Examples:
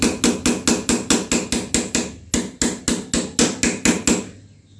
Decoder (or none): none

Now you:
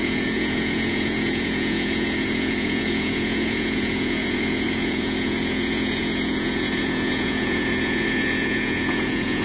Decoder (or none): vocoder, Vocos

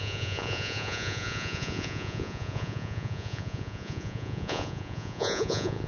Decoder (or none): vocoder, Vocos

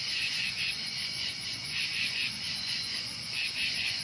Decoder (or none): vocoder, Vocos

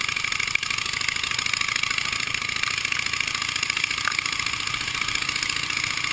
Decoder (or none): none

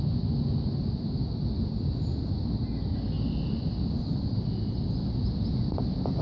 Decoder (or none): none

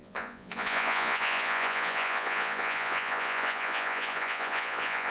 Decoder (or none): vocoder, Vocos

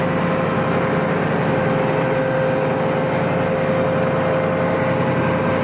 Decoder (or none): none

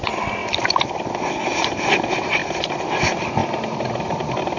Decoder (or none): none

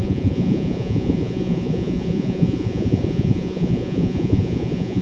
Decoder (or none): vocoder, Vocos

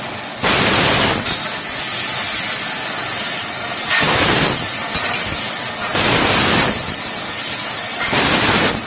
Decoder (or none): none